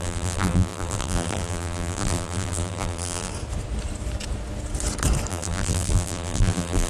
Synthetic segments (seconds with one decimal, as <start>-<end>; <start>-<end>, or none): 0.0-3.3; 5.3-6.9